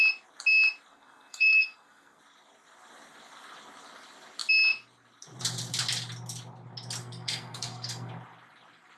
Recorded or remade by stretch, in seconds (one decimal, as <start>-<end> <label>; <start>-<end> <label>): 0.0-0.9 recorded; 0.9-2.2 remade; 2.2-7.0 recorded; 7.0-8.1 remade; 8.1-9.0 recorded